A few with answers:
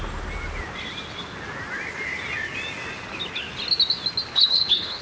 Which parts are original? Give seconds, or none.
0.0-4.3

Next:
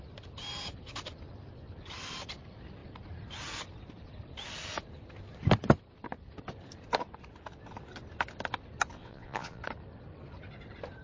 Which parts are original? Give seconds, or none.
0.0-9.0; 9.6-11.0

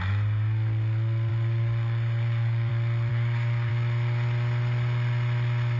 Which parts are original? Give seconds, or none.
0.0-1.3; 2.7-3.1; 3.7-5.8

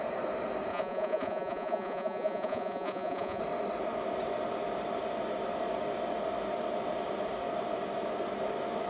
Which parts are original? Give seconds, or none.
0.0-0.7; 3.4-8.9

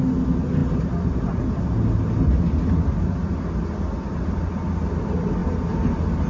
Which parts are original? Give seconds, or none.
0.0-6.3